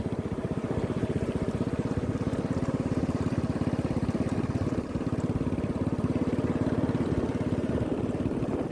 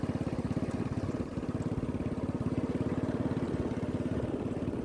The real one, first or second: second